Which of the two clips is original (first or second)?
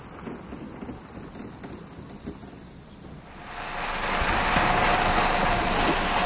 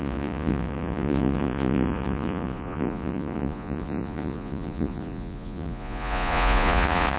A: first